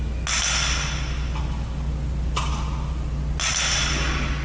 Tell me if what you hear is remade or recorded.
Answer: recorded